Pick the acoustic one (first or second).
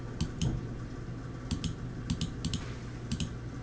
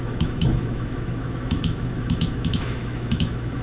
first